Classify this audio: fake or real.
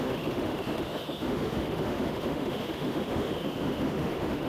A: fake